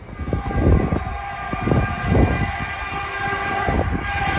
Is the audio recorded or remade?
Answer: recorded